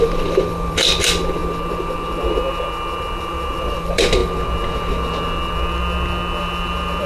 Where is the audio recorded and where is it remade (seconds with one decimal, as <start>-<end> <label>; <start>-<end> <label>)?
0.0-1.4 remade; 1.4-3.2 recorded; 3.2-4.2 remade; 4.2-6.4 recorded; 6.4-7.1 remade